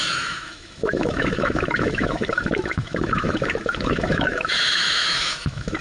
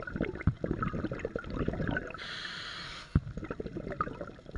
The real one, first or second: second